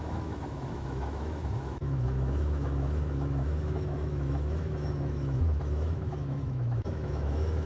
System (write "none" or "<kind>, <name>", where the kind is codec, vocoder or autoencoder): autoencoder, DAC-VAE